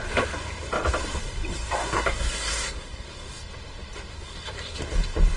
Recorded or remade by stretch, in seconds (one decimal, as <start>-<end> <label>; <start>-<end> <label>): 0.0-1.8 recorded; 1.8-3.4 remade; 3.4-4.1 recorded; 4.1-4.8 remade; 4.8-5.4 recorded